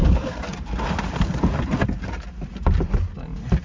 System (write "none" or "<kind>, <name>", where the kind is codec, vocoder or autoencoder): none